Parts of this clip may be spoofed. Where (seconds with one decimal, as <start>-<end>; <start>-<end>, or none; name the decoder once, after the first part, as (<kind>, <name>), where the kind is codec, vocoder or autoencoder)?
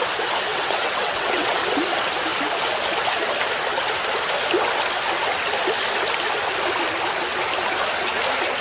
0.5-1.6 (vocoder, WaveNeXt)